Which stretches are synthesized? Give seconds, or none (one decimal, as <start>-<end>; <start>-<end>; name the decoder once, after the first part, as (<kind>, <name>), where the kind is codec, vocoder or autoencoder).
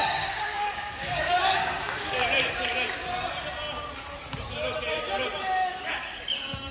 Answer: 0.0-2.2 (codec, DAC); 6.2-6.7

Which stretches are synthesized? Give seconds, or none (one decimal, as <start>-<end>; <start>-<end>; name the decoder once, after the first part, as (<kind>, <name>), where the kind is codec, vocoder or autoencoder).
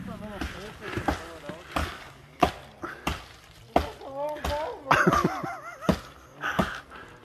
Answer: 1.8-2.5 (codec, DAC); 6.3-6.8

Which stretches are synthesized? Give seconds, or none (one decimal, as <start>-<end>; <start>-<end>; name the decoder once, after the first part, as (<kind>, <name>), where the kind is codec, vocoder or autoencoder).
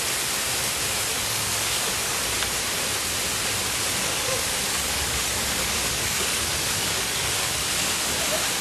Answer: 1.1-2.2 (codec, DAC); 4.0-8.2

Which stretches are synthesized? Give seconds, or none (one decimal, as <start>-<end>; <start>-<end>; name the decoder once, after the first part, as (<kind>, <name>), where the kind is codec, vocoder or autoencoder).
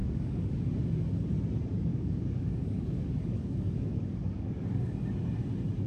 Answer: 0.0-0.6 (codec, DAC); 1.9-5.0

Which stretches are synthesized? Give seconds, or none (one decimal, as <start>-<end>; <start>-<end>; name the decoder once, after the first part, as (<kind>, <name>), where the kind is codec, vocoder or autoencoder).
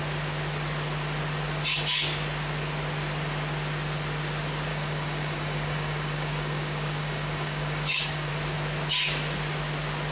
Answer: 4.7-8.3 (codec, DAC)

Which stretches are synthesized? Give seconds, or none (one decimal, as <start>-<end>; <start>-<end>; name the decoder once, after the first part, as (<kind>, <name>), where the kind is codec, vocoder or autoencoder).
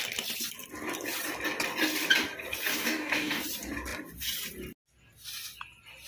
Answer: 2.7-3.4 (codec, DAC)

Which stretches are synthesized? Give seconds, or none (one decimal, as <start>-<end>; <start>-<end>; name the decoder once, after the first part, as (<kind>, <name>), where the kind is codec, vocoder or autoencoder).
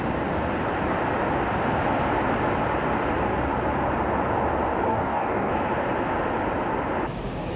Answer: 4.9-5.5 (codec, DAC)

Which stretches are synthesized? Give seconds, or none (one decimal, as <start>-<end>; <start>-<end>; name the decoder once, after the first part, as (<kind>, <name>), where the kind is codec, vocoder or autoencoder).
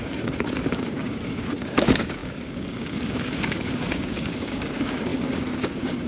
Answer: 0.0-6.1 (codec, DAC)